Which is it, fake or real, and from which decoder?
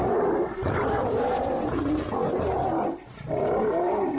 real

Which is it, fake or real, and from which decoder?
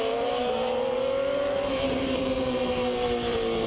fake, vocoder, BigVGAN v2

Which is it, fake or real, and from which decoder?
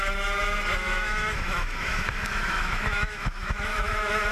fake, autoencoder, DAC-VAE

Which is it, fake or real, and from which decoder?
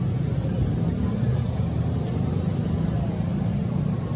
real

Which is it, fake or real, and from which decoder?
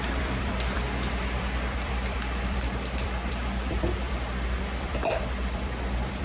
fake, vocoder, BigVGAN v2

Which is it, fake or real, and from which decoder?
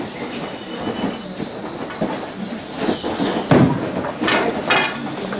real